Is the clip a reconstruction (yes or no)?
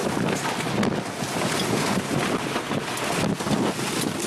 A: no